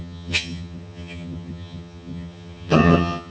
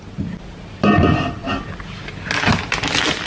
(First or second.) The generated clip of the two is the first